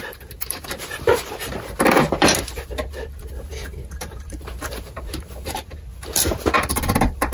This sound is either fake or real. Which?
fake